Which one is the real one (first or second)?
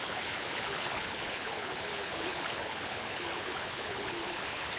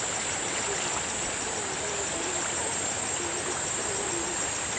second